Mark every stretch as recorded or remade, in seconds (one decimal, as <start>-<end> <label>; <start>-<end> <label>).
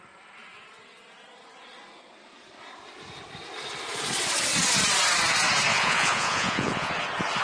0.0-5.7 recorded; 5.7-6.9 remade; 6.9-7.4 recorded